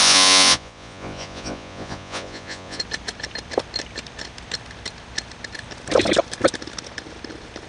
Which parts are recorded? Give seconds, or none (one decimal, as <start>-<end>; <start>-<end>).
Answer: 2.8-7.7